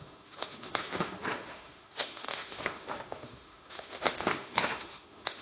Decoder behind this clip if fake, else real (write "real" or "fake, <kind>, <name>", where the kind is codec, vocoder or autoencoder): fake, autoencoder, DAC-VAE